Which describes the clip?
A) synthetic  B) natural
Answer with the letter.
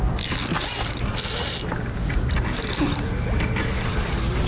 B